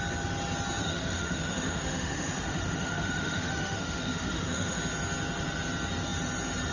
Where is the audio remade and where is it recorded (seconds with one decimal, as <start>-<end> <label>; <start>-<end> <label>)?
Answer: 0.0-0.8 recorded; 0.8-4.8 remade; 4.8-6.7 recorded